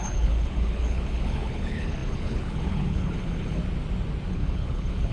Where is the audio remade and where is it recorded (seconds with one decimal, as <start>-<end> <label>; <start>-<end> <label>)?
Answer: 0.0-3.6 remade; 3.6-4.3 recorded; 4.3-5.1 remade